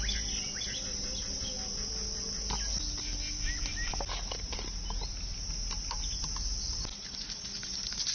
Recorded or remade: recorded